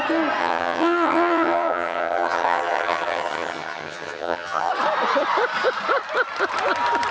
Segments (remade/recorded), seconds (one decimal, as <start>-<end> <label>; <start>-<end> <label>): 0.0-0.4 recorded; 0.4-4.7 remade; 4.7-7.1 recorded